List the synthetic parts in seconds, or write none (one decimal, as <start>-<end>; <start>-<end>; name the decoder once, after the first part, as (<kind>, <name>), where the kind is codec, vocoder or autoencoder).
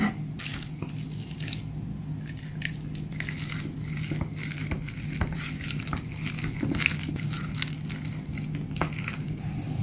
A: none